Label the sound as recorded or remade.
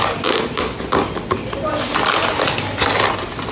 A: recorded